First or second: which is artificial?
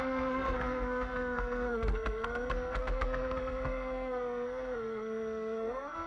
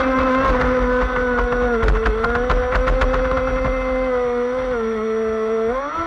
first